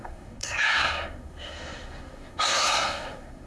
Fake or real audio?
fake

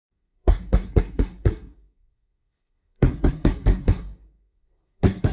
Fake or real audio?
fake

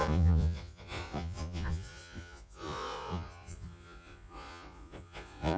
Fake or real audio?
fake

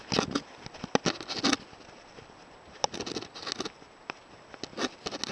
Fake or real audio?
real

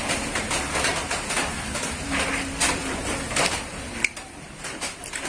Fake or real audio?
real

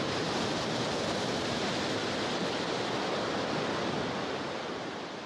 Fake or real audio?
real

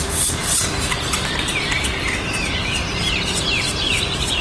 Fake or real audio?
fake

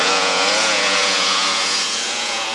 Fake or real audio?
fake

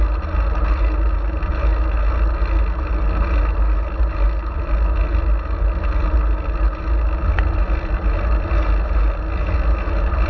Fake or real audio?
real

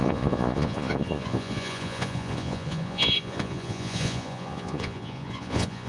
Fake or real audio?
fake